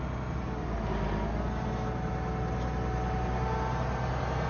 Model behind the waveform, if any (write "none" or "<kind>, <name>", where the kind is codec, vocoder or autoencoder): none